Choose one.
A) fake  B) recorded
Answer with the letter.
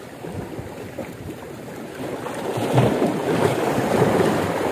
B